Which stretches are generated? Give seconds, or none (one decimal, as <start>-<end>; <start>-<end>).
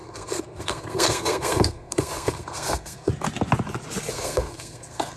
0.0-3.1; 4.1-5.2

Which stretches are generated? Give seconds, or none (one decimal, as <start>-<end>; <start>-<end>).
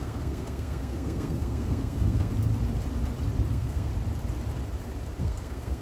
0.0-2.3; 3.5-3.9; 5.2-5.8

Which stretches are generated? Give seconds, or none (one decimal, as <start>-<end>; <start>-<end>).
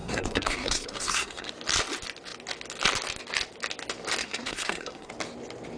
0.0-1.5; 4.2-5.1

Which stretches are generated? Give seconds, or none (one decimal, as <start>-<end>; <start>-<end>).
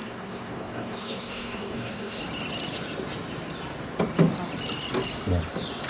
0.0-2.2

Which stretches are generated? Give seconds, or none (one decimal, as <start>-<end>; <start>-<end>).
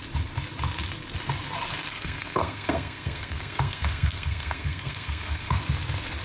1.9-5.6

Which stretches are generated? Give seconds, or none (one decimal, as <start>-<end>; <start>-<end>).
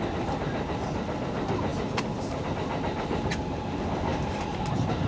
none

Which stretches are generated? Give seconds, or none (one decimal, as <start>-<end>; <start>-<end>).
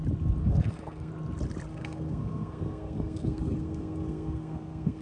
0.4-1.1; 1.7-5.0